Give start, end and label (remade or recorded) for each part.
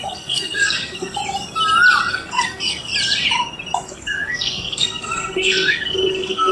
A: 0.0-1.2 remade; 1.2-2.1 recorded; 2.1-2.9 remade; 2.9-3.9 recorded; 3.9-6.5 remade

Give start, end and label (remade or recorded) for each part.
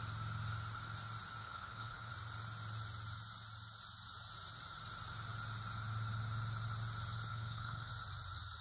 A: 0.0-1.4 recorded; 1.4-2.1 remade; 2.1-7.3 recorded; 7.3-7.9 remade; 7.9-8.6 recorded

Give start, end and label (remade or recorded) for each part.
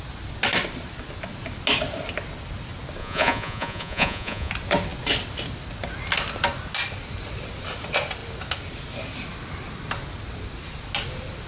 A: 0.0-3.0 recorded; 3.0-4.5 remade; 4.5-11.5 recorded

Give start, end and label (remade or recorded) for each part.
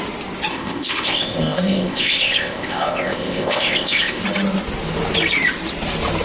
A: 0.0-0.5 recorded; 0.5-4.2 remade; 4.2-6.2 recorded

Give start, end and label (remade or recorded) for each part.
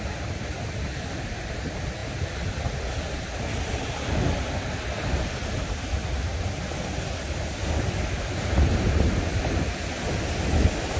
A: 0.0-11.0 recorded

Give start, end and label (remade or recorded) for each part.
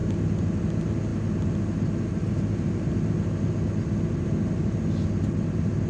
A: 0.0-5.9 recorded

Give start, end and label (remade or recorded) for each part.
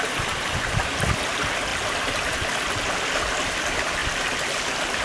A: 0.0-5.0 recorded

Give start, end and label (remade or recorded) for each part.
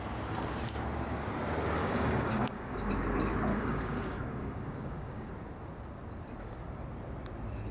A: 0.0-1.8 recorded; 1.8-2.9 remade; 2.9-3.5 recorded; 3.5-5.3 remade; 5.3-7.7 recorded